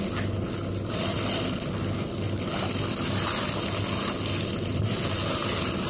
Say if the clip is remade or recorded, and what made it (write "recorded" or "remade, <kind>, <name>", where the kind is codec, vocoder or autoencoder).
recorded